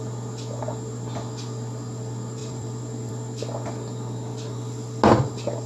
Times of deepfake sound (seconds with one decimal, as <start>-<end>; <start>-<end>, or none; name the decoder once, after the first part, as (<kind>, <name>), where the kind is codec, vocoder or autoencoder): 2.4-3.1 (vocoder, BigVGAN v2)

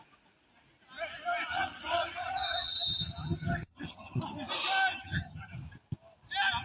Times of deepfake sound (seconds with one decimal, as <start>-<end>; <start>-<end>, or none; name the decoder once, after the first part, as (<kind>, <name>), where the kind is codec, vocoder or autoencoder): 1.5-4.2 (vocoder, HiFi-GAN); 4.9-5.6

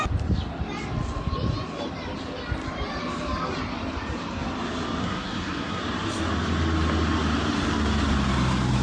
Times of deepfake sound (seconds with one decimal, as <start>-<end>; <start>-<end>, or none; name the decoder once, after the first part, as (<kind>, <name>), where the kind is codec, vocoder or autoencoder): 5.0-5.8 (codec, SNAC)

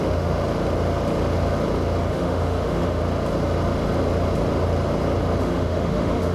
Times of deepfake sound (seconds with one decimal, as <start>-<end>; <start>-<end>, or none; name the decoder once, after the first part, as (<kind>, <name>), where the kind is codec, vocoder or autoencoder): 0.0-0.4 (autoencoder, DAC-VAE); 2.1-3.0; 5.4-6.3

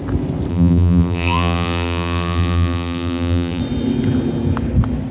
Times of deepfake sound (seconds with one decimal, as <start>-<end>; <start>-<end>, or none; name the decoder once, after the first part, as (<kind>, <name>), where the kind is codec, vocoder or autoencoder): 0.5-3.6 (vocoder, BigVGAN v2)

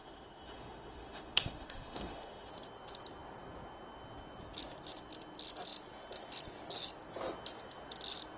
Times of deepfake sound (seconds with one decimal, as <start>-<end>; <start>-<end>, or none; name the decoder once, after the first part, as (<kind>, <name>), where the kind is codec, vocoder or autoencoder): 0.0-2.5 (autoencoder, DAC-VAE)

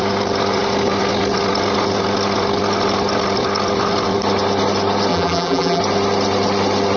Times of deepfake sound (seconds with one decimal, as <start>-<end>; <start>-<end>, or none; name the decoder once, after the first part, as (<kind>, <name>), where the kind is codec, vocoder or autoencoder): 5.1-5.8 (vocoder, BigVGAN v2)

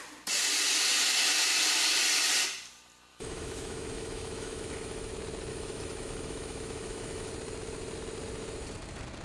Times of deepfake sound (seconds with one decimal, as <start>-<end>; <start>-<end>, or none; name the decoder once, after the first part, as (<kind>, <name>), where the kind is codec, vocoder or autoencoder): 3.1-5.1 (autoencoder, DAC-VAE); 5.5-7.3